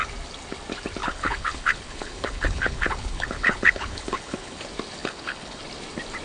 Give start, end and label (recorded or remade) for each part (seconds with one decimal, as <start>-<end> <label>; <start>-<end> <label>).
0.0-1.0 recorded; 1.0-4.6 remade; 4.6-5.0 recorded; 5.0-5.6 remade; 5.6-6.2 recorded